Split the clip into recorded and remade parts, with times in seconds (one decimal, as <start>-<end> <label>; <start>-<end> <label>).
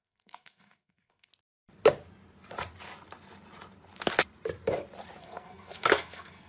0.0-1.3 remade; 1.3-5.2 recorded; 5.2-6.5 remade